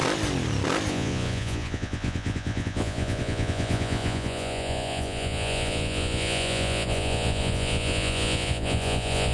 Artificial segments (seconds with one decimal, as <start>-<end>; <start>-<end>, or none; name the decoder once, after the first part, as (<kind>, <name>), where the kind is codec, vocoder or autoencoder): 0.9-9.3 (vocoder, Vocos)